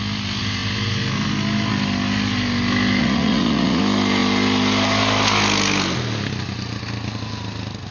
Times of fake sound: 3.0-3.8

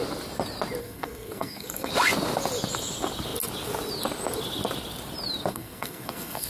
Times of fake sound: 0.8-1.9; 5.5-6.5

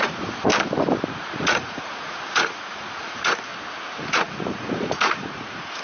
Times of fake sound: 0.0-0.5; 1.1-3.5; 4.0-5.8

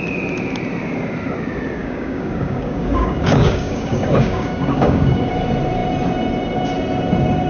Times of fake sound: 1.8-5.3

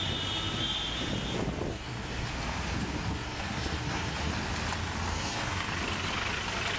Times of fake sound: 1.7-2.3; 3.1-4.3; 5.1-5.7

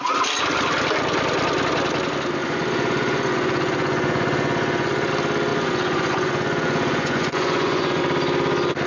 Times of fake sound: 2.4-5.1; 5.5-8.0

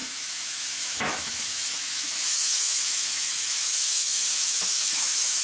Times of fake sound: 0.0-5.4